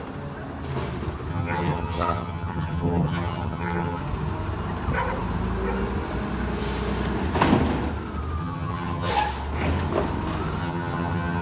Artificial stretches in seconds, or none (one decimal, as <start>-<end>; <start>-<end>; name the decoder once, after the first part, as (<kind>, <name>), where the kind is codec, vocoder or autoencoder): 1.3-4.0 (vocoder, HiFi-GAN); 8.4-9.1; 10.6-11.4

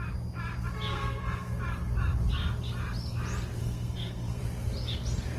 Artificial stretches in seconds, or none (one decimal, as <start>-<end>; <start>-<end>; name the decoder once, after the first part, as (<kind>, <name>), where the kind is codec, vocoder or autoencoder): 0.9-1.6 (codec, SNAC); 3.6-4.4

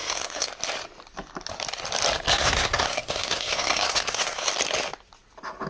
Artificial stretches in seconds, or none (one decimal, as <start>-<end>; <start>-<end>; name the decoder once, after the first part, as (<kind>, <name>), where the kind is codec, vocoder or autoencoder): 0.0-0.5 (codec, SNAC); 2.3-4.5